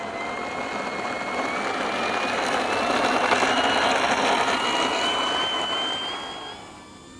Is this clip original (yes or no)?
yes